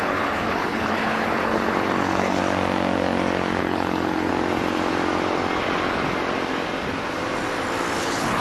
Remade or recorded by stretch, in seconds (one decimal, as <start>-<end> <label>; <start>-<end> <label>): 0.0-2.4 remade; 2.4-3.6 recorded; 3.6-4.3 remade; 4.3-8.0 recorded; 8.0-8.4 remade